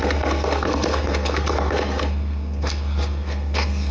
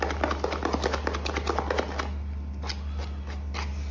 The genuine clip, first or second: second